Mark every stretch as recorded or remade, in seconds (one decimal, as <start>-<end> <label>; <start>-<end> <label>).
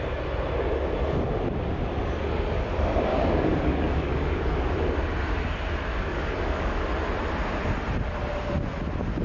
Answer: 0.0-3.1 recorded; 3.1-4.7 remade; 4.7-5.9 recorded; 5.9-6.9 remade; 6.9-9.2 recorded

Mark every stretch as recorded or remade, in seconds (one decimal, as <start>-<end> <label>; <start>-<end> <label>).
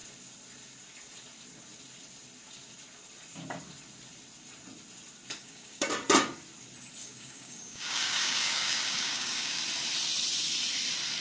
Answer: 0.0-5.4 recorded; 5.4-5.9 remade; 5.9-7.0 recorded; 7.0-9.6 remade; 9.6-11.2 recorded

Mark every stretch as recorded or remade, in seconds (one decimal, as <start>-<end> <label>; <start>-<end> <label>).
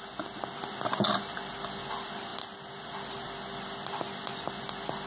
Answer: 0.0-5.1 recorded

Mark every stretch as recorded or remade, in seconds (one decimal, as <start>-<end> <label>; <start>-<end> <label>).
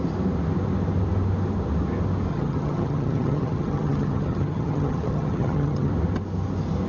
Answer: 0.0-2.3 recorded; 2.3-5.9 remade; 5.9-6.9 recorded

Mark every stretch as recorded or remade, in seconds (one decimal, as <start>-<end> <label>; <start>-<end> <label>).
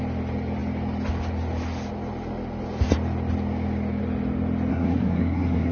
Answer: 0.0-4.7 recorded; 4.7-5.7 remade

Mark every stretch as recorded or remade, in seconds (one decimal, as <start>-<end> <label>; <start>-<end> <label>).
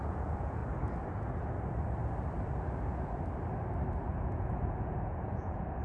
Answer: 0.0-0.6 remade; 0.6-4.1 recorded; 4.1-5.8 remade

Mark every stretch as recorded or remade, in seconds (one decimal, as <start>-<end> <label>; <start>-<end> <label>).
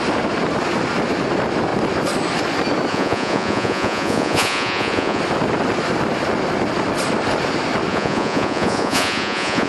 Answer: 0.0-2.9 recorded; 2.9-5.2 remade; 5.2-7.9 recorded; 7.9-9.7 remade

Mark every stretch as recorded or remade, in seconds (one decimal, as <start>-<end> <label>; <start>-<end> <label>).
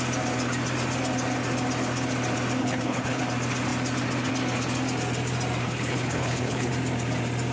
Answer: 0.0-2.6 recorded; 2.6-3.2 remade; 3.2-5.6 recorded; 5.6-6.7 remade; 6.7-7.5 recorded